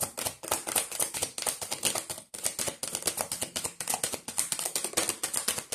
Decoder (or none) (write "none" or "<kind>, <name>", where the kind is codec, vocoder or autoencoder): none